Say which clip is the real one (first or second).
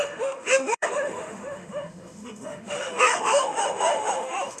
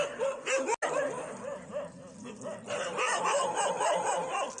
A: second